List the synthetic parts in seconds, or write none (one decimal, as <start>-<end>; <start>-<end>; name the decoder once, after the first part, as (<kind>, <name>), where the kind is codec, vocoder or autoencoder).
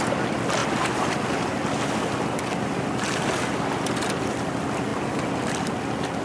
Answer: none